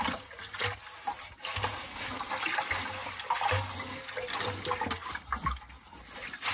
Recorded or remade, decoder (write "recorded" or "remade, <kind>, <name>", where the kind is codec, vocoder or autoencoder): recorded